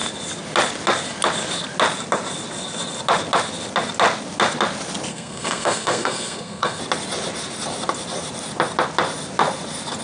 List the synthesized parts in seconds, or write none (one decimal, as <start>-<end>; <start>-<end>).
5.1-6.8